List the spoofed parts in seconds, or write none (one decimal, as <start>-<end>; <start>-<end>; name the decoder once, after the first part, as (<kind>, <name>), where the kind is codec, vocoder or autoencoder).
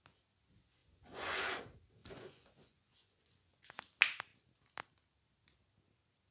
0.8-1.6 (vocoder, Vocos); 2.0-3.8